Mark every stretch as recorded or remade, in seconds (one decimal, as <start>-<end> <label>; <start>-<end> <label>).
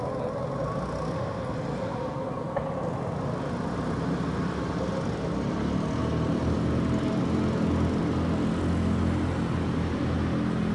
0.0-10.7 recorded